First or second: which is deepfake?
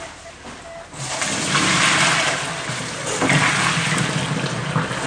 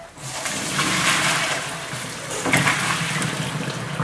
second